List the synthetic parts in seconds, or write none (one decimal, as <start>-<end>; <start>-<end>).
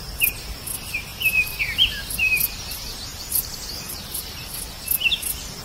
1.1-2.3; 3.1-4.5